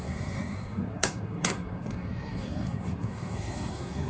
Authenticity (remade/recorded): remade